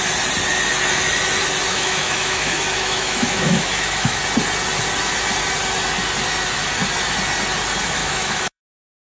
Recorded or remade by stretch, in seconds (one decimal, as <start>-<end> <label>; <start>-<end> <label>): 0.0-1.7 recorded; 1.7-4.2 remade; 4.2-8.0 recorded; 8.0-8.6 remade; 8.6-9.1 recorded